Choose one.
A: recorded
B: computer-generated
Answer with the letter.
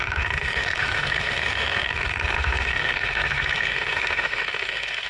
B